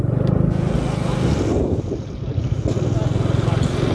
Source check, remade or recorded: recorded